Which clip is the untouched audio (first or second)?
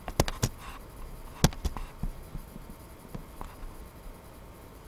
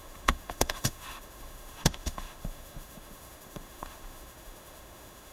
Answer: first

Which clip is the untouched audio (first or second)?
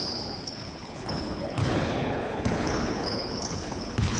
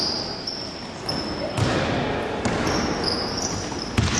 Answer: second